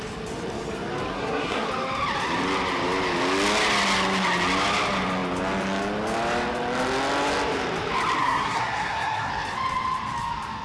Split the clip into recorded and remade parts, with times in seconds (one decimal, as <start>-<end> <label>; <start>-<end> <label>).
0.0-1.1 recorded; 1.1-1.7 remade; 1.7-8.2 recorded; 8.2-9.3 remade; 9.3-10.6 recorded